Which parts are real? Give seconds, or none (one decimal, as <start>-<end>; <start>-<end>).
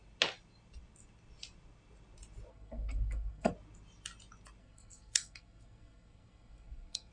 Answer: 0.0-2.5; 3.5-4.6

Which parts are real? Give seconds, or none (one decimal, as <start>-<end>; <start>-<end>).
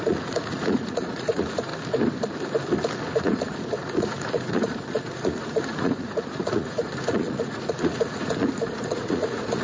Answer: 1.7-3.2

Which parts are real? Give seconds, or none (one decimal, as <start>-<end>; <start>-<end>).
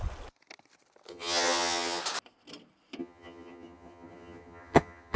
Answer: 0.0-1.1; 2.0-3.0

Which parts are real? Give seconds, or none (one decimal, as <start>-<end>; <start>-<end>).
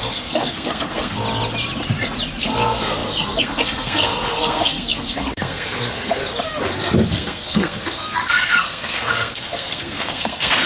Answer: 1.2-2.4; 6.2-7.1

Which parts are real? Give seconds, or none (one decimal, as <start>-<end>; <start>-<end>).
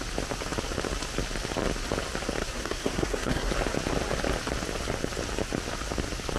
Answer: 0.0-2.4; 3.5-6.4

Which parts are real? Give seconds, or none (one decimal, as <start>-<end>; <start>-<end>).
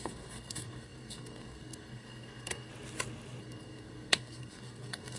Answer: 2.7-3.4